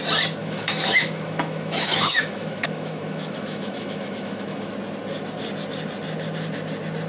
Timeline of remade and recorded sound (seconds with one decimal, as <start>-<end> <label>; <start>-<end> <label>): 0.0-0.4 recorded; 0.4-4.7 remade; 4.7-7.1 recorded